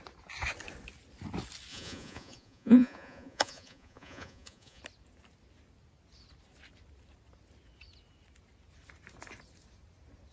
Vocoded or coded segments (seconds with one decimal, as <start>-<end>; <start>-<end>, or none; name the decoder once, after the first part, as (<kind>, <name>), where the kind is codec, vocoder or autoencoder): 1.7-4.8 (vocoder, Vocos)